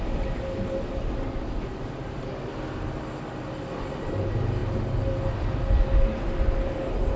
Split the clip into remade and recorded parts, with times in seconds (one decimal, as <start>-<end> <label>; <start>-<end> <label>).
0.0-7.2 recorded